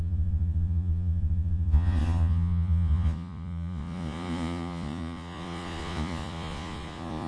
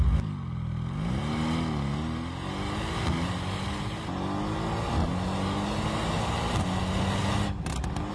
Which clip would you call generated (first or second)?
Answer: first